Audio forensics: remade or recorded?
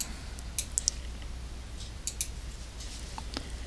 recorded